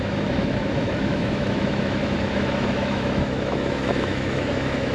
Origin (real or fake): fake